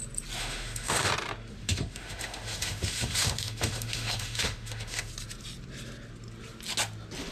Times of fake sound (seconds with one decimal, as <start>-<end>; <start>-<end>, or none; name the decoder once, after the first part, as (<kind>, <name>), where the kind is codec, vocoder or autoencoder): 0.4-1.1 (autoencoder, DAC-VAE); 1.6-5.1

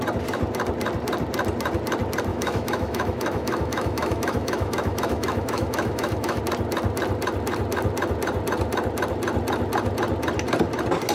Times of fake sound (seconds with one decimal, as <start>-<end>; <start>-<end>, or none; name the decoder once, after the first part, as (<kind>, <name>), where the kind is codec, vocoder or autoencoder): 2.3-6.4 (autoencoder, DAC-VAE)